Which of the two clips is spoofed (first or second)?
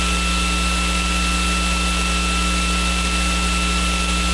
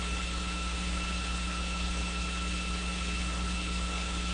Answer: second